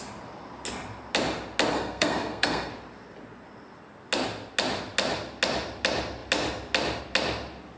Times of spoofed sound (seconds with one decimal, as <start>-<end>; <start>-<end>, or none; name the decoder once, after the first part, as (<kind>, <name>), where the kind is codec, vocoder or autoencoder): 1.7-2.7 (codec, SNAC)